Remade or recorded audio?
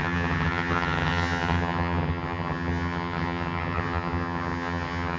remade